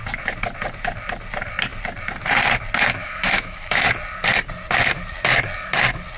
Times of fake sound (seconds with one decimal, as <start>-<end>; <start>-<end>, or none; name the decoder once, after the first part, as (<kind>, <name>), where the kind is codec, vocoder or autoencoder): 3.0-3.8 (autoencoder, DAC-VAE)